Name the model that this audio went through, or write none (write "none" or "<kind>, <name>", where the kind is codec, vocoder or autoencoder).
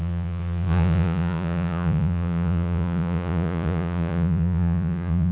vocoder, Vocos